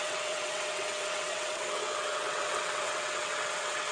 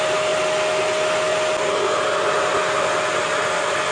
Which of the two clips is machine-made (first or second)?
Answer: first